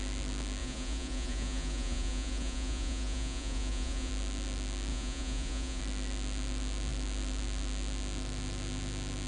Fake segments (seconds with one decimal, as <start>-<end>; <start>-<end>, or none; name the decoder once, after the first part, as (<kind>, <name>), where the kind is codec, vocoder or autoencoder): 0.6-4.1 (vocoder, Vocos); 4.9-5.8